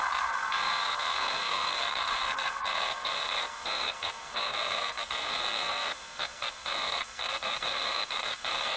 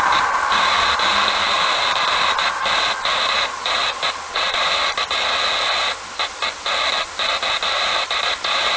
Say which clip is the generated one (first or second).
first